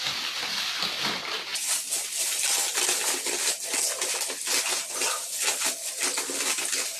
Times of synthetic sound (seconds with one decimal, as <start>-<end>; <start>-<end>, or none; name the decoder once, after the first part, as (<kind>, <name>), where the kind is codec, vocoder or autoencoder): none